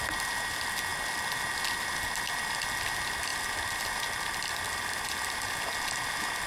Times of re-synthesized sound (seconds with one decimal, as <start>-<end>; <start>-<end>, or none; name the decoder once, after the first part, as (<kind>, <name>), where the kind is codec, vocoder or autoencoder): 3.3-5.1 (vocoder, BigVGAN v2)